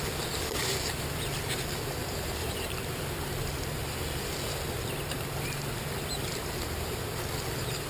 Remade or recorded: remade